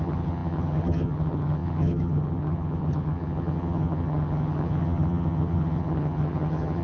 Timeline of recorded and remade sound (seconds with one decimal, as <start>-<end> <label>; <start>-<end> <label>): 0.0-6.8 remade